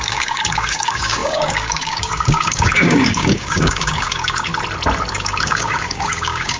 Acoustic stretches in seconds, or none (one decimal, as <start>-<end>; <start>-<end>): 4.5-5.1